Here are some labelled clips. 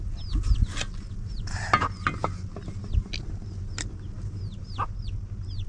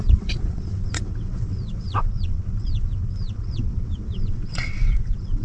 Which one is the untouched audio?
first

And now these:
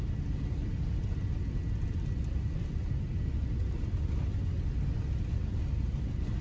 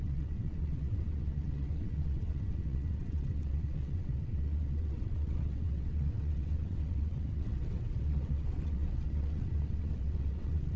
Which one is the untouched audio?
first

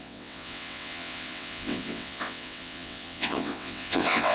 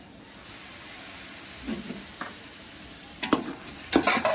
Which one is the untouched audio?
second